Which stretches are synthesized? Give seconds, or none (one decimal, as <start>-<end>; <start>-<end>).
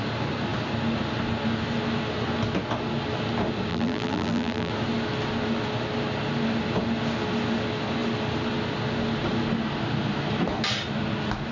3.7-4.7